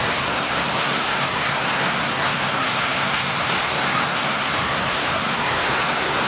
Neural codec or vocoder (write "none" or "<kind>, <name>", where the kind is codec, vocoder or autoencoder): codec, SNAC